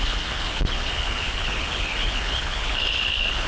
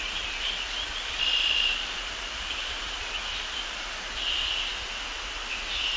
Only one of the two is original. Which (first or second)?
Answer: second